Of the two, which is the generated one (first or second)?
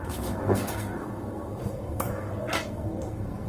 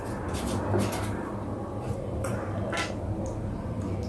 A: first